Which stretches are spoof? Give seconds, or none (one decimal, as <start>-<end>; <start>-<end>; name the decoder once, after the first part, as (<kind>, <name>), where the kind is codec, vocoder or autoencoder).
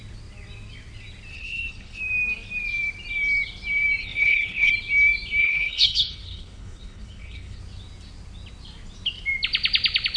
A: 1.3-2.0 (codec, HILCodec); 4.0-4.7; 5.4-7.6